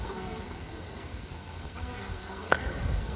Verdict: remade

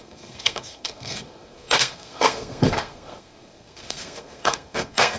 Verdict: remade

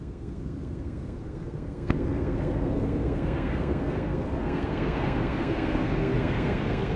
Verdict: remade